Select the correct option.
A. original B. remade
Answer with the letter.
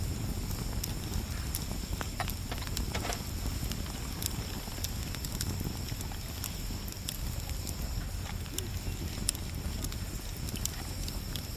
A